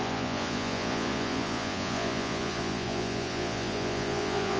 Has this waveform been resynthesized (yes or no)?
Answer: yes